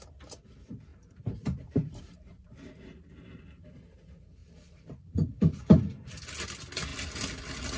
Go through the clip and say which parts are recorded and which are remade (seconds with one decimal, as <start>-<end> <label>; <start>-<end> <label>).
0.0-0.9 recorded; 0.9-3.4 remade; 3.4-4.4 recorded; 4.4-6.2 remade; 6.2-7.8 recorded

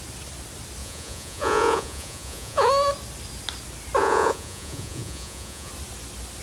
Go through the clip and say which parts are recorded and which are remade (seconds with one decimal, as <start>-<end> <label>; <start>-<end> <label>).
0.0-0.8 recorded; 0.8-2.7 remade; 2.7-4.0 recorded; 4.0-5.7 remade; 5.7-6.4 recorded

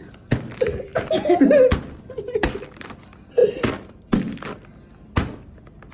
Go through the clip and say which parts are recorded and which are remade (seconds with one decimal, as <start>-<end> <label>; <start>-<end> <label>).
0.0-5.9 recorded

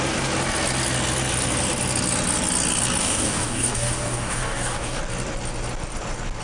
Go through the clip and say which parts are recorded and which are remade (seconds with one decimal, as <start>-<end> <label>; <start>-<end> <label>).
0.0-3.0 recorded; 3.0-5.0 remade; 5.0-6.4 recorded

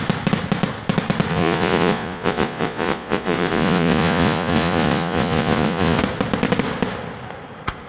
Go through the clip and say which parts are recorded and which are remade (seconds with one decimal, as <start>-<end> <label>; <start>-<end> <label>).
0.0-1.3 recorded; 1.3-6.0 remade; 6.0-7.9 recorded

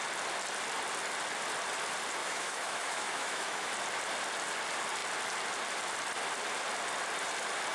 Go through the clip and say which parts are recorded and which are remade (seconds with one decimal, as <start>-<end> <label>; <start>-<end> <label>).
0.0-2.2 recorded; 2.2-3.7 remade; 3.7-7.7 recorded

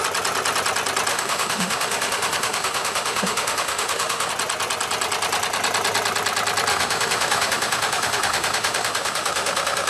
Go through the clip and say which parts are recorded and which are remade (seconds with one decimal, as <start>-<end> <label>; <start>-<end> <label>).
0.0-1.1 recorded; 1.1-4.3 remade; 4.3-6.7 recorded; 6.7-9.9 remade

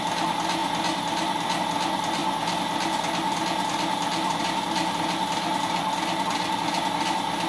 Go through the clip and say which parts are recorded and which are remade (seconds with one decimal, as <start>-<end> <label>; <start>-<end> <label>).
0.0-7.5 recorded